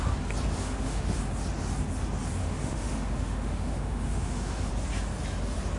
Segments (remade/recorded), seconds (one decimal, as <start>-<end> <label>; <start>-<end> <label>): 0.0-0.6 recorded; 0.6-1.2 remade; 1.2-2.4 recorded; 2.4-4.7 remade; 4.7-5.8 recorded